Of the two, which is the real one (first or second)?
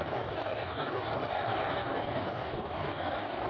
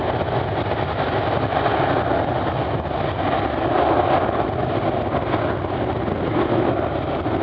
second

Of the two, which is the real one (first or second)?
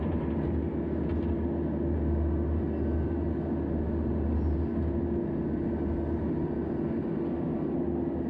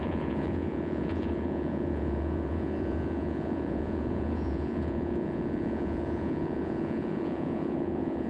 first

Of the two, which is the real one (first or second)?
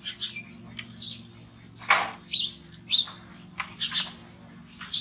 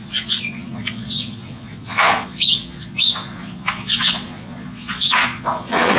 first